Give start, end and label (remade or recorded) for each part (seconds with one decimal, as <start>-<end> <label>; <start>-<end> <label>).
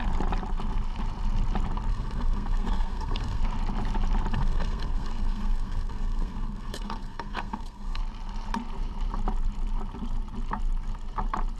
0.0-1.9 recorded; 1.9-3.4 remade; 3.4-4.3 recorded; 4.3-8.0 remade; 8.0-11.6 recorded